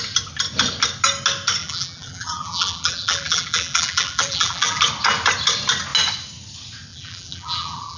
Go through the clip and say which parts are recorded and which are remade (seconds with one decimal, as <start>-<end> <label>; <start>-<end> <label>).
0.0-1.6 recorded; 1.6-4.8 remade; 4.8-6.9 recorded; 6.9-8.0 remade